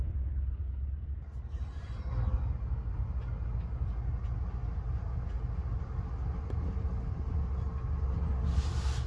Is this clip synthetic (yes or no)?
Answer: no